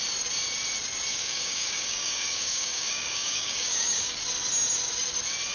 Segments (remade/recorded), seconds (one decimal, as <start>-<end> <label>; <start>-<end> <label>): 0.0-1.1 recorded; 1.1-4.2 remade; 4.2-5.5 recorded